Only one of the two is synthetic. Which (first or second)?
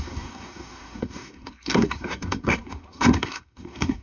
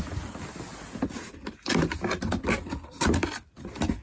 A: first